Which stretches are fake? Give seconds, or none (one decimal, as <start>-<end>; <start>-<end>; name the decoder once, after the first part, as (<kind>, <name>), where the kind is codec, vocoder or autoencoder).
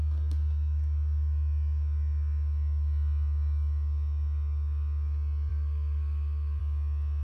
5.5-6.6 (codec, SNAC)